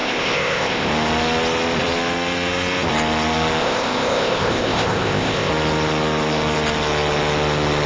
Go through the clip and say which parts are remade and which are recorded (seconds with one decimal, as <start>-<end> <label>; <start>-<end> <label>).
0.0-0.9 remade; 0.9-3.6 recorded; 3.6-5.5 remade; 5.5-7.9 recorded